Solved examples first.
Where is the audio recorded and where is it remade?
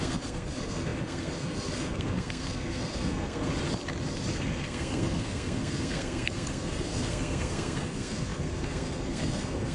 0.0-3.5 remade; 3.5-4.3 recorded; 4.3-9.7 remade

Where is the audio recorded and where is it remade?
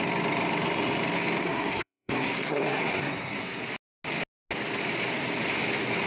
0.0-1.4 recorded; 1.4-3.6 remade; 3.6-6.1 recorded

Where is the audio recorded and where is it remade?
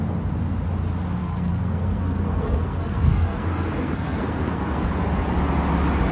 0.0-1.2 recorded; 1.2-4.9 remade; 4.9-6.1 recorded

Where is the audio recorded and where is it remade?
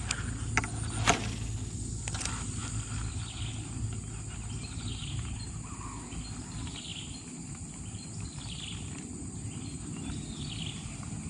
0.0-4.9 recorded; 4.9-5.9 remade; 5.9-11.3 recorded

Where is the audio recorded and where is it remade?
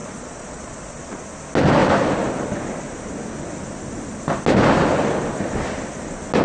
0.0-1.2 remade; 1.2-6.4 recorded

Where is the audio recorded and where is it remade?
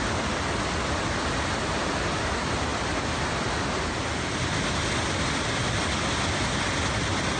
0.0-7.4 recorded